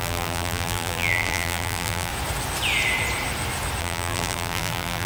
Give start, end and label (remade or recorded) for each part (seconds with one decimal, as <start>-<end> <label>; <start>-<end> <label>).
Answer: 0.0-2.1 remade; 2.1-3.8 recorded; 3.8-5.1 remade